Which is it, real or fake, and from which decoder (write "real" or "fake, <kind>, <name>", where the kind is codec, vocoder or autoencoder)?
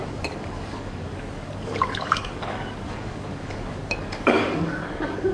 fake, codec, DAC